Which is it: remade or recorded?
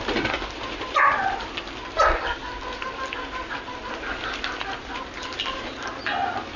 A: recorded